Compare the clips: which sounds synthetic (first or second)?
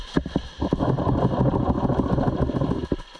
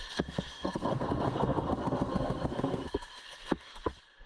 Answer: second